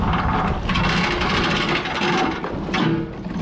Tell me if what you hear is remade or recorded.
recorded